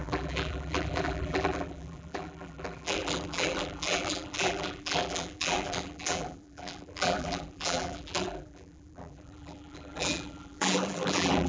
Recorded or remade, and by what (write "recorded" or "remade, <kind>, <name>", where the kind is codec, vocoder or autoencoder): remade, vocoder, BigVGAN v2